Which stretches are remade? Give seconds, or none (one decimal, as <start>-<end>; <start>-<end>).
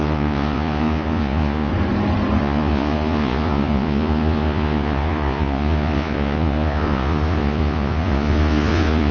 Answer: 0.0-1.7; 2.4-9.1